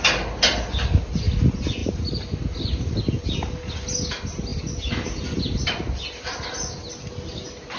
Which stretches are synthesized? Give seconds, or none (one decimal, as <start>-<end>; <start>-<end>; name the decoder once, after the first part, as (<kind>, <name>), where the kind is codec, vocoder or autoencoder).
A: none